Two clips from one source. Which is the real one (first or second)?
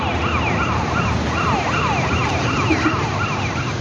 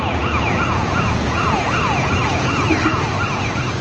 first